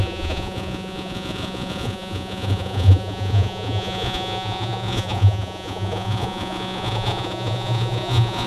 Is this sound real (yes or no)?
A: no